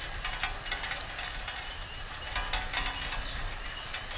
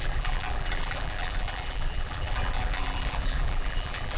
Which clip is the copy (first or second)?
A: second